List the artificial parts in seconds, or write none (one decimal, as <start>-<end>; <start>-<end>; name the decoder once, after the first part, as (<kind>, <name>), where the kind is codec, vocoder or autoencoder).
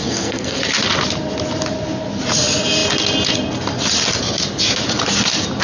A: 0.0-0.6 (codec, SNAC)